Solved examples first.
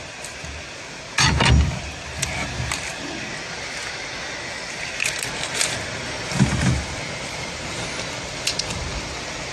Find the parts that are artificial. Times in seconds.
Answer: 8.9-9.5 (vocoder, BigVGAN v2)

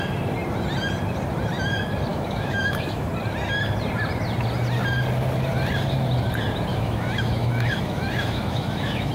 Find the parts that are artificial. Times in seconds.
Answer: 2.1-3.1 (autoencoder, DAC-VAE); 6.7-9.1

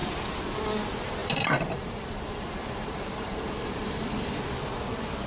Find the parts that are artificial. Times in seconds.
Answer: 1.2-4.4 (vocoder, BigVGAN v2)

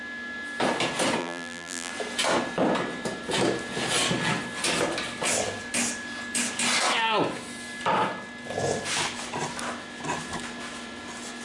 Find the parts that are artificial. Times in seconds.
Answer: 1.2-1.9 (vocoder, BigVGAN v2)

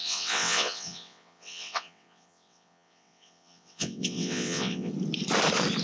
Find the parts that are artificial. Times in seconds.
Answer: 0.0-4.9 (vocoder, WaveNeXt)

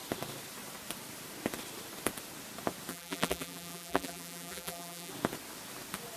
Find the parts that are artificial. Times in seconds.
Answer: 2.9-5.1 (vocoder, BigVGAN v2)

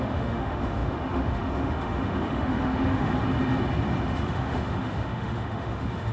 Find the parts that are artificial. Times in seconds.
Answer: 0.0-3.1 (autoencoder, DAC-VAE); 4.0-6.1